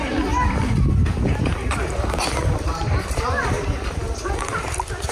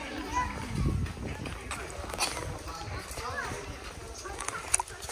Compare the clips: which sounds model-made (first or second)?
first